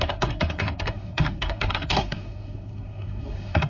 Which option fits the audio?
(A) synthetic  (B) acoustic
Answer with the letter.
A